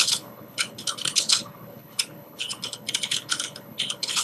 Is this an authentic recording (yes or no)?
no